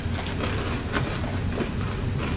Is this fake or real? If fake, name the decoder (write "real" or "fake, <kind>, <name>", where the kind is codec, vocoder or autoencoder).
real